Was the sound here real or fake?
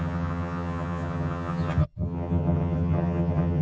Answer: fake